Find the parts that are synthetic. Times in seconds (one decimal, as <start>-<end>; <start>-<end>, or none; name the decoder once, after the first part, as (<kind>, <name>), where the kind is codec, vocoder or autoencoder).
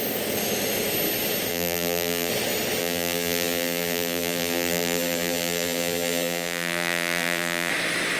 1.5-2.3 (vocoder, BigVGAN v2); 2.8-7.7